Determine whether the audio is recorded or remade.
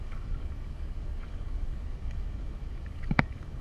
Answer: remade